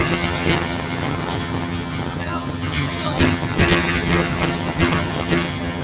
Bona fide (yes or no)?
no